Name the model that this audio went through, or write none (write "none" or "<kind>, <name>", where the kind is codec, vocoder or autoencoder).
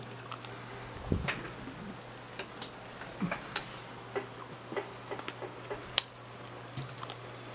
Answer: none